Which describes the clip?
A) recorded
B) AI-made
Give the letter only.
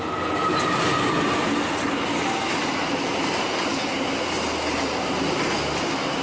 A